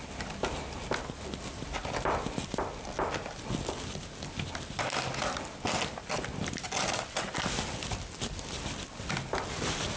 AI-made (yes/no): no